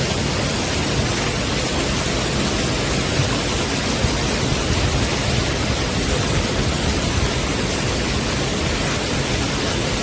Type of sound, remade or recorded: recorded